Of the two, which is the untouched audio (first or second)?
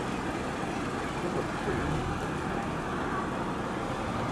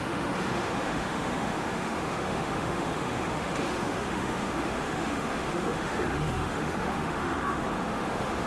first